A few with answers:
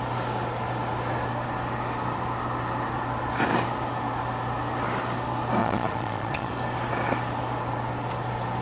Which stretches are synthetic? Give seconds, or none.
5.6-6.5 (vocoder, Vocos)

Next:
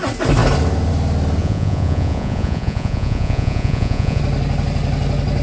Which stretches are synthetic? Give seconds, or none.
1.4-4.2 (vocoder, Vocos)

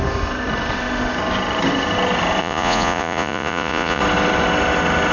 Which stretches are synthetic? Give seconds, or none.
2.4-4.0 (vocoder, Vocos)